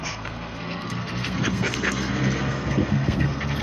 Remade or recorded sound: remade